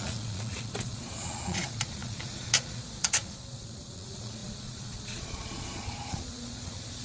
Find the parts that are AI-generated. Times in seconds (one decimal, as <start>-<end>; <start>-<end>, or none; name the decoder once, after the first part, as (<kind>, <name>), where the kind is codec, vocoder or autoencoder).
0.0-7.0 (vocoder, Vocos)